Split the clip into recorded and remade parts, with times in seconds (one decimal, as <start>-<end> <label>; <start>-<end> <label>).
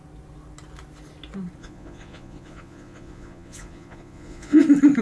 0.0-1.6 recorded; 1.6-4.6 remade; 4.6-5.0 recorded